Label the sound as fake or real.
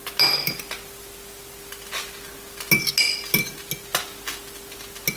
real